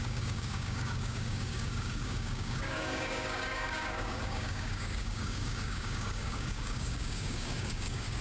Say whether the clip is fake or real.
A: fake